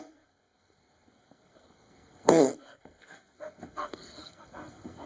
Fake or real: fake